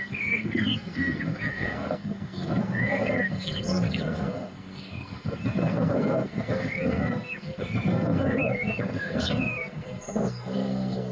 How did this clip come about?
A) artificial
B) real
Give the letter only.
A